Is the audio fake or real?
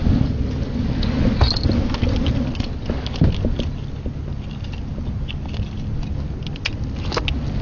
real